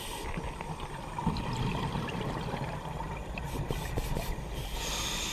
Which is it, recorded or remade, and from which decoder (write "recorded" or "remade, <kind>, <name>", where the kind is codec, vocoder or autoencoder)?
recorded